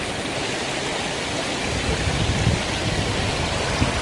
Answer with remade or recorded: recorded